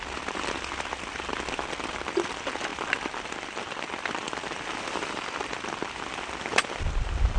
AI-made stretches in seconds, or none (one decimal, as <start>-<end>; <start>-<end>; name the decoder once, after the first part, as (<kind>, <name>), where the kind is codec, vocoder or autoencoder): none